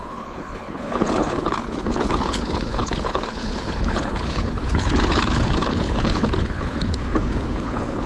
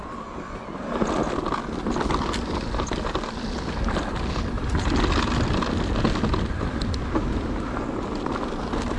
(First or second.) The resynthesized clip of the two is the first